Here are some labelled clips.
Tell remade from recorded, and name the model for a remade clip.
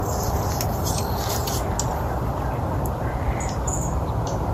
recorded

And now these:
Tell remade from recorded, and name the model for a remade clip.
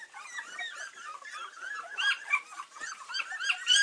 remade, vocoder, BigVGAN v2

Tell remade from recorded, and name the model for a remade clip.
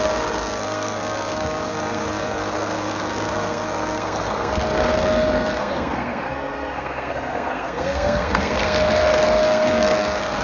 remade, codec, SNAC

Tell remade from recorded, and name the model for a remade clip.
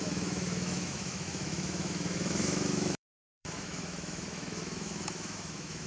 remade, autoencoder, DAC-VAE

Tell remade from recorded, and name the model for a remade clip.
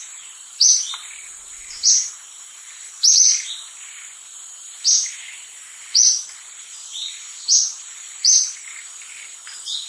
remade, vocoder, BigVGAN v2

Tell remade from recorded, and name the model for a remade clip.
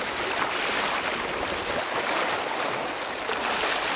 recorded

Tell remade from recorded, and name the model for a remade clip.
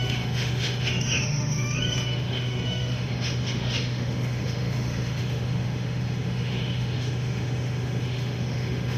remade, autoencoder, DAC-VAE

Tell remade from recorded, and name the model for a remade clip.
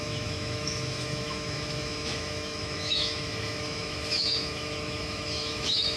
remade, autoencoder, DAC-VAE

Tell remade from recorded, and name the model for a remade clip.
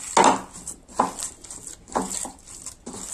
recorded